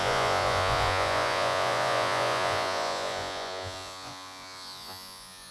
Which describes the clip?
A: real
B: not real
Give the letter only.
B